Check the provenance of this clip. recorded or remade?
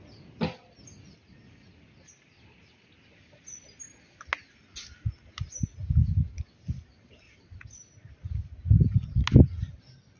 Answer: recorded